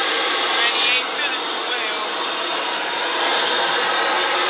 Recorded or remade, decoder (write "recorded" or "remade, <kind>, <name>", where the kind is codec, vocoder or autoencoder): recorded